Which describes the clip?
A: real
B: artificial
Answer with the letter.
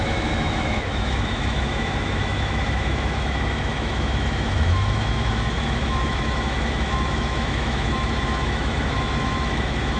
B